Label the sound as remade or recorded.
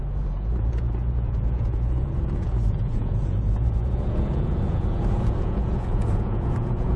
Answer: remade